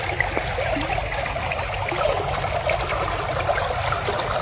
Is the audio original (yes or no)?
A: yes